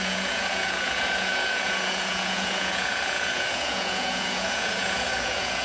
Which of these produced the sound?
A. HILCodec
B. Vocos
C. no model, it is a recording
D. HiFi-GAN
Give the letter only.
B